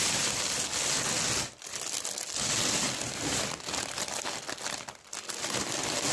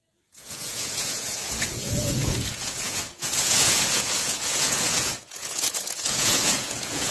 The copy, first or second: second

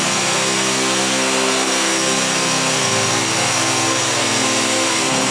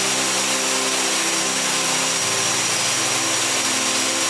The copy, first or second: first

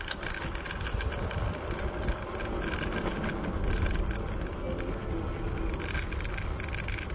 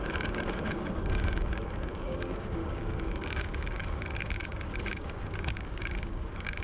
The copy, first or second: second